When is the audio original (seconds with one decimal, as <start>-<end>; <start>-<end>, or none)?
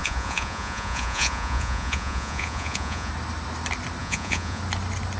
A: 3.1-4.0; 4.6-5.2